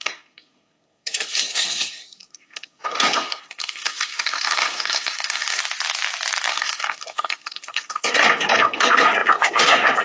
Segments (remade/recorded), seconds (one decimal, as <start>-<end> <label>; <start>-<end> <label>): 0.0-5.6 remade; 5.6-6.5 recorded; 6.5-10.0 remade